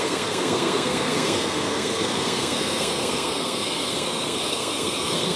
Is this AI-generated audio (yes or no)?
yes